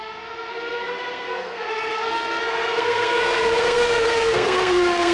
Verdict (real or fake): fake